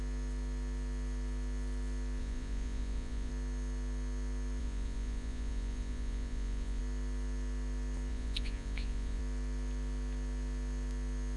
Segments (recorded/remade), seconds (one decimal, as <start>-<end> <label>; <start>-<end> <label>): 0.0-2.2 recorded; 2.2-3.3 remade; 3.3-4.6 recorded; 4.6-6.8 remade; 6.8-8.1 recorded; 8.1-9.2 remade; 9.2-11.4 recorded